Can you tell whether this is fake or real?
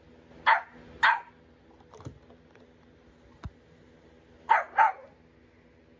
real